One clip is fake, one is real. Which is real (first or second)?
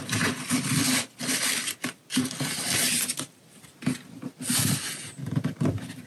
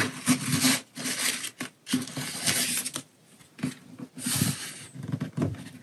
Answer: second